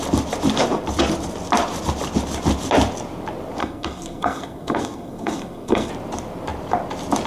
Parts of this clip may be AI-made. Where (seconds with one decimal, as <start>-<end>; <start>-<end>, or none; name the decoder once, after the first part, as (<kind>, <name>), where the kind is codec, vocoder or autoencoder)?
3.6-5.9 (codec, SNAC)